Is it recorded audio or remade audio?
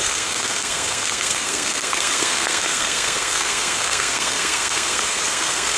remade